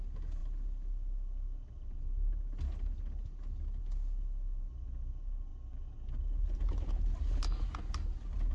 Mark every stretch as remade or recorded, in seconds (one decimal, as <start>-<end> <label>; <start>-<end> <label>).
0.0-8.5 recorded